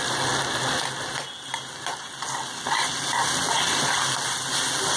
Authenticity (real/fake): real